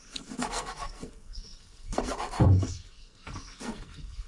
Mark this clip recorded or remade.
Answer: remade